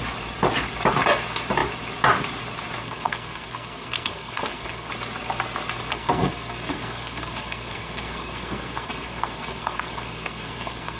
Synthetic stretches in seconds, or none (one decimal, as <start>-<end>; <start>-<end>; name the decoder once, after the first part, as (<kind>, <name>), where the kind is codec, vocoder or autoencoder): 2.8-4.9 (codec, SNAC); 5.9-11.0